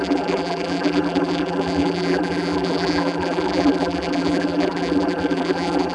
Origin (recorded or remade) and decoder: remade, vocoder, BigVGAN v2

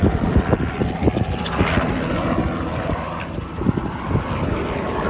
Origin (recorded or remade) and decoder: recorded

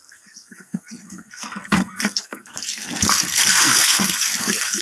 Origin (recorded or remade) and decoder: remade, codec, SNAC